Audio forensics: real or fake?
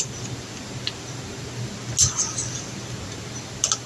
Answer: real